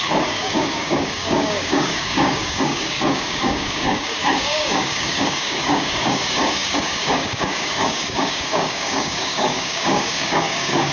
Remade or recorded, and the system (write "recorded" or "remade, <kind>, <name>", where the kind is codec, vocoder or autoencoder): remade, codec, DAC